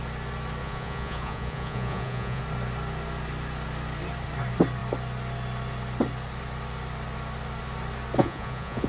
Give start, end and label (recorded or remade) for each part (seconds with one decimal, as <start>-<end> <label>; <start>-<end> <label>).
0.0-0.6 recorded; 0.6-2.4 remade; 2.4-8.2 recorded; 8.2-8.9 remade